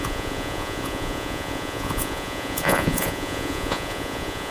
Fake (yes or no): yes